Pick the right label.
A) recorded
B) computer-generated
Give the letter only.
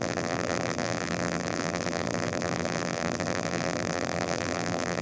B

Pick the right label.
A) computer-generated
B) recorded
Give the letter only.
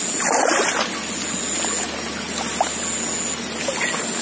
B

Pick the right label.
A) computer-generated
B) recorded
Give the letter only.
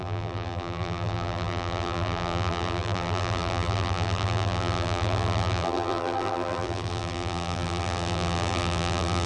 A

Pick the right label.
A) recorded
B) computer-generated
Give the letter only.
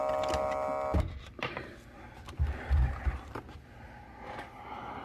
A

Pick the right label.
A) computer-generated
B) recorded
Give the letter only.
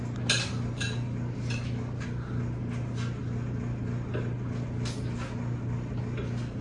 B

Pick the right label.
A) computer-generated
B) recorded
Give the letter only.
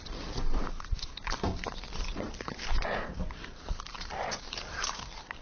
A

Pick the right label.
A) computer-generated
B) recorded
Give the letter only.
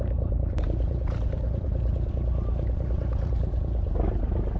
A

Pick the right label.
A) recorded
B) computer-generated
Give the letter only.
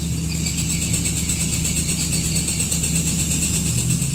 A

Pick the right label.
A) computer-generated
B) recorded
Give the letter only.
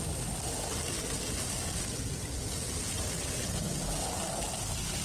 B